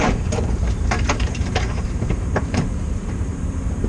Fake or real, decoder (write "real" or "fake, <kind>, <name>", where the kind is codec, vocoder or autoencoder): fake, vocoder, BigVGAN v2